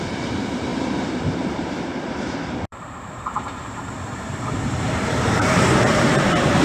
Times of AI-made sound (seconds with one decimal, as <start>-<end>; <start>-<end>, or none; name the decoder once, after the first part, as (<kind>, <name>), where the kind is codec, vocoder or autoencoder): 0.0-6.6 (vocoder, BigVGAN v2)